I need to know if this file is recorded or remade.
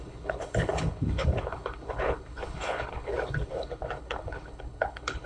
remade